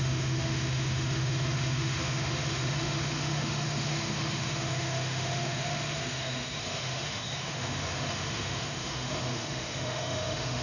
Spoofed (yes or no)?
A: yes